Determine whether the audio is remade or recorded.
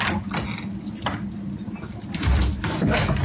recorded